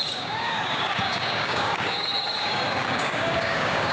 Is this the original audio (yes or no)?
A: no